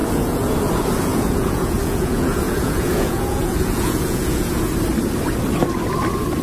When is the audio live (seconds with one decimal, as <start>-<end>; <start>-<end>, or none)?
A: 0.6-1.1; 4.7-6.4